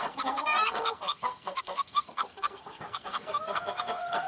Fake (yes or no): yes